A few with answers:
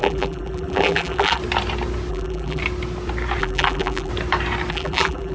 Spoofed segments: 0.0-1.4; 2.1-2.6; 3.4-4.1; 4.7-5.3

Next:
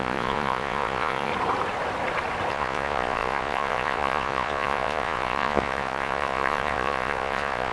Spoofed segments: 0.0-1.3; 2.5-7.7

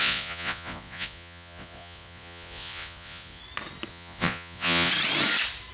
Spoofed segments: 0.0-3.4; 3.9-4.9

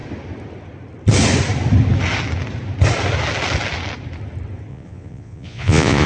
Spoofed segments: 4.7-6.1

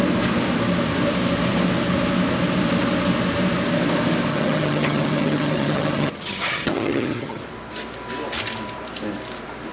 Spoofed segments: 4.3-7.4

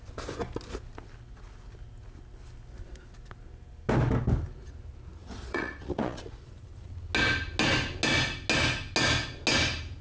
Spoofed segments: 5.2-6.9